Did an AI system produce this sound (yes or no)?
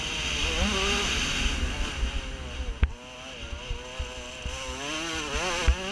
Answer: no